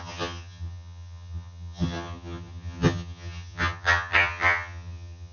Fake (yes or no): yes